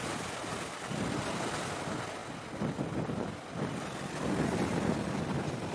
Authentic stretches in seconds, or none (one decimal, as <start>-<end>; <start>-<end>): none